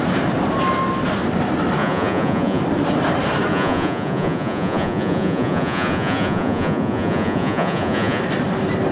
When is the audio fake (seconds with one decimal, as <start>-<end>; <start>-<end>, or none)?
1.8-2.6; 3.5-8.2